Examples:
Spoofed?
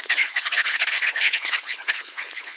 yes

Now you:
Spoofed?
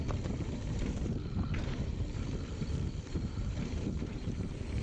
yes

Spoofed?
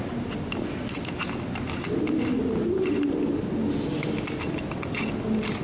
no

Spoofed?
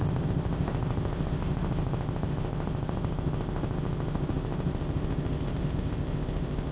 yes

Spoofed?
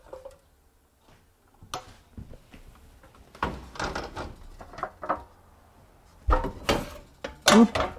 no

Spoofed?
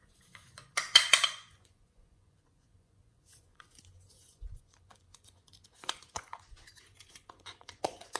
yes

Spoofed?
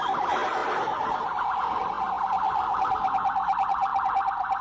no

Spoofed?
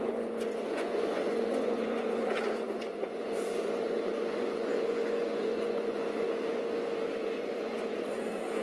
yes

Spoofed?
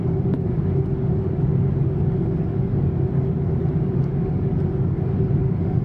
yes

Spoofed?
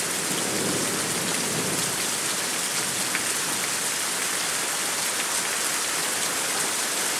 no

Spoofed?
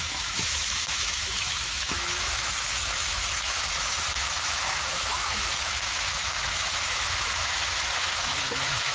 yes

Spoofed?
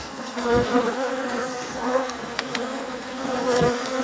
yes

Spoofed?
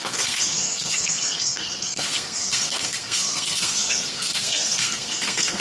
yes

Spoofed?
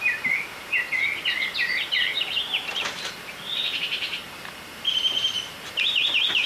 yes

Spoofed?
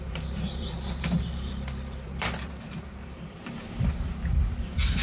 yes